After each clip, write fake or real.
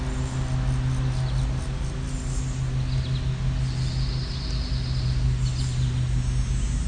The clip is real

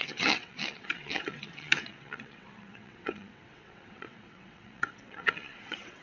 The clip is fake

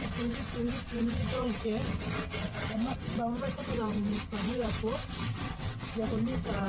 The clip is fake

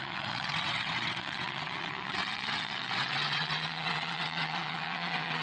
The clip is fake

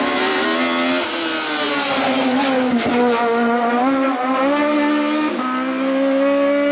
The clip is real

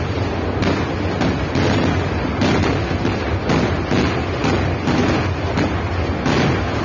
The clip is real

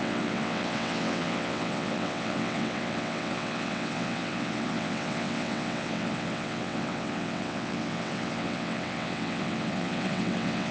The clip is fake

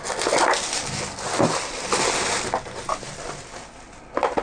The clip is real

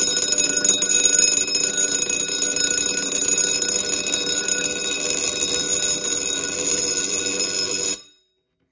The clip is real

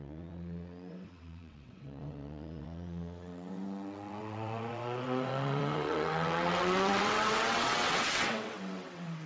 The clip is fake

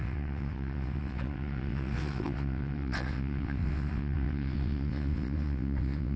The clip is fake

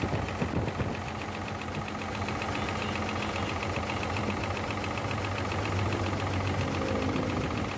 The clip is real